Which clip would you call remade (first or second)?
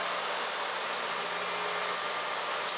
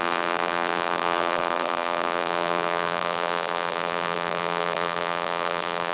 second